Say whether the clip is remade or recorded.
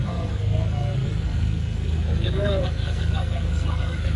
remade